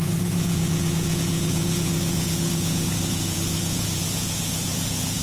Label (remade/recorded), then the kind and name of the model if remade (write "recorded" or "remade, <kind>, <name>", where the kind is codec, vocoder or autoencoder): remade, vocoder, Vocos